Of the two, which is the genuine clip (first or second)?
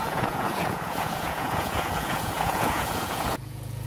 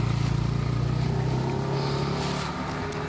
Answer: second